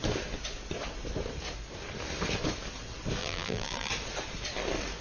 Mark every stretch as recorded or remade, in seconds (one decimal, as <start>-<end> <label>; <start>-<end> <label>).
0.0-3.2 recorded; 3.2-3.9 remade; 3.9-5.0 recorded